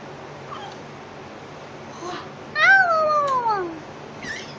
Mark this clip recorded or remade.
recorded